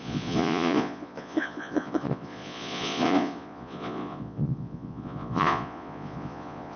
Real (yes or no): no